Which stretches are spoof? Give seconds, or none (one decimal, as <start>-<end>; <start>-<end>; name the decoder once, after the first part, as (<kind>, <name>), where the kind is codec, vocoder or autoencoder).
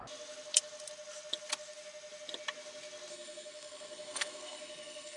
3.1-5.2 (codec, SNAC)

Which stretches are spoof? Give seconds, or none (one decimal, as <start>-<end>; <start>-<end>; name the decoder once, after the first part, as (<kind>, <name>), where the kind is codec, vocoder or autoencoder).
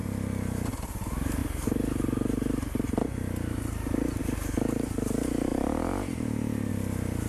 none